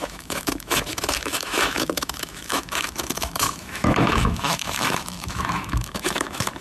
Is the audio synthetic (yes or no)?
yes